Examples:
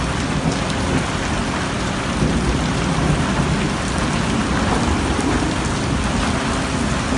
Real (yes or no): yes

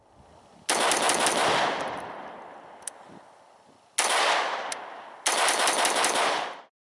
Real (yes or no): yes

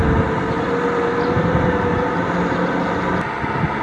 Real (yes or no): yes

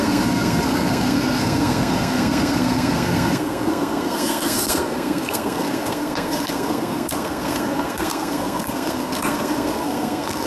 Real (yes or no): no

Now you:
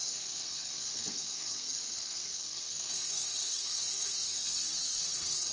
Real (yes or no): no